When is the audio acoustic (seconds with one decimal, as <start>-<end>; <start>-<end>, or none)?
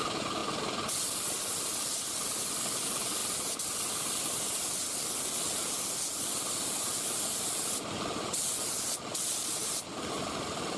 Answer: 0.0-10.8